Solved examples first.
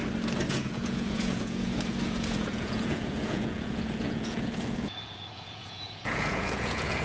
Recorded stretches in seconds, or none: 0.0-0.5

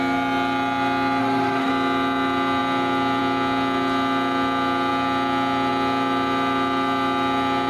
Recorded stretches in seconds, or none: 0.0-1.2; 1.7-7.7